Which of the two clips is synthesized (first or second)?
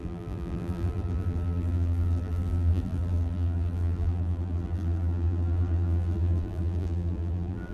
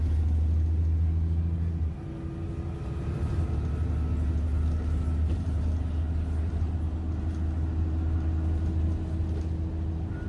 first